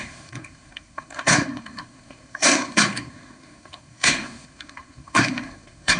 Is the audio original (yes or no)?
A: no